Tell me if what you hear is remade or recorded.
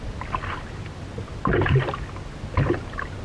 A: recorded